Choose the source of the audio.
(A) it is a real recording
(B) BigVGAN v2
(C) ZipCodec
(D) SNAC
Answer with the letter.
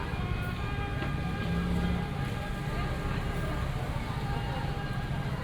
A